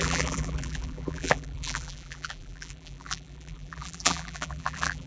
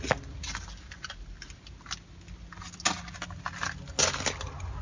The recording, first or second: second